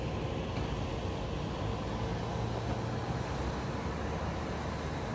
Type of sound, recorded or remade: recorded